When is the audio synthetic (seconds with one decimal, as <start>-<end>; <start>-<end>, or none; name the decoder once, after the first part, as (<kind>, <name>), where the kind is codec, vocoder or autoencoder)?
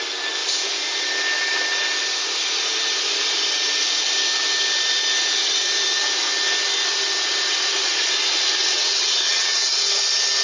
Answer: 8.6-9.7 (vocoder, WaveNeXt)